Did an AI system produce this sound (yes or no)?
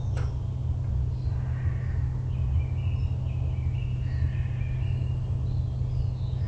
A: no